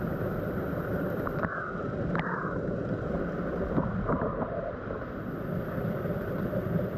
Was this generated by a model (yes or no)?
no